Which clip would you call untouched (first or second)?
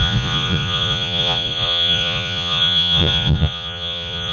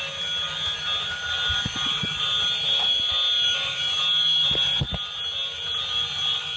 second